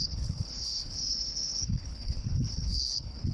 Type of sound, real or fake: fake